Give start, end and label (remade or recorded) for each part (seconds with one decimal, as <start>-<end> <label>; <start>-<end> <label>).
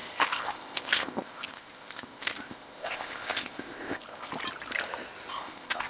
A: 0.0-4.3 remade; 4.3-5.3 recorded; 5.3-5.9 remade